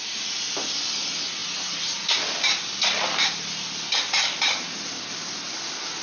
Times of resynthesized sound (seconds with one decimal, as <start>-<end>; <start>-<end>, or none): none